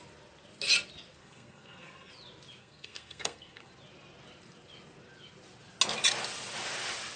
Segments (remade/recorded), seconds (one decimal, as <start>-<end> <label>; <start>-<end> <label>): 0.0-1.2 recorded; 1.2-2.1 remade; 2.1-2.6 recorded; 2.6-3.7 remade; 3.7-7.2 recorded